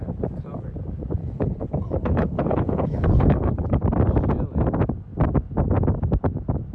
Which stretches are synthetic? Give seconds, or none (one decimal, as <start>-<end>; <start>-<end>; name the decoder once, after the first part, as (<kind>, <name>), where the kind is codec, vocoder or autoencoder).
1.2-3.8 (codec, HILCodec)

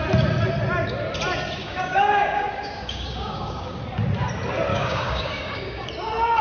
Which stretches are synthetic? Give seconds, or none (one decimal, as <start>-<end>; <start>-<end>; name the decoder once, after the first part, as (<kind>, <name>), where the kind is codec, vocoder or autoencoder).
1.6-3.8 (codec, DAC); 4.7-5.9

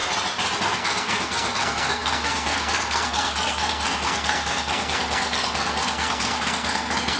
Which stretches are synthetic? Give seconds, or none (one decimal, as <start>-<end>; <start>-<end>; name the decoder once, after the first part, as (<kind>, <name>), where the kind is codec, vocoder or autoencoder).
0.6-7.2 (codec, SNAC)

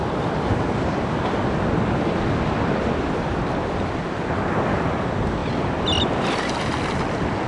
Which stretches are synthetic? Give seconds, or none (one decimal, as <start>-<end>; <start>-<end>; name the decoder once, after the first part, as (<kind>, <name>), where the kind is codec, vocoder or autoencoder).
none

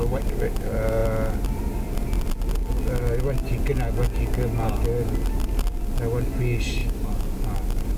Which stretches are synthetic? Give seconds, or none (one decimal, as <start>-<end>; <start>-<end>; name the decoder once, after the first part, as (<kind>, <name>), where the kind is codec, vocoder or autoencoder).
6.8-7.6 (vocoder, BigVGAN v2)

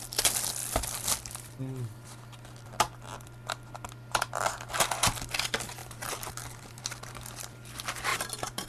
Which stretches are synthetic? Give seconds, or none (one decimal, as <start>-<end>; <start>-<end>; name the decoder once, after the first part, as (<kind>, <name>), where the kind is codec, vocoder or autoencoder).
5.8-6.8 (vocoder, BigVGAN v2); 8.1-8.7

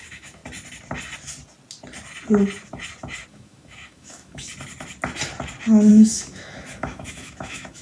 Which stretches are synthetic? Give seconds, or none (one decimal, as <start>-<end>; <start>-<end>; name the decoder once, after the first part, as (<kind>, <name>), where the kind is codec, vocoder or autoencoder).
0.0-0.4 (autoencoder, DAC-VAE); 3.3-4.5; 5.9-7.8